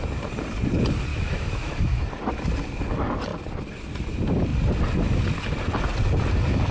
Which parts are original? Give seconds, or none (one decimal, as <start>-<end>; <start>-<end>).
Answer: 0.0-1.1; 2.0-6.7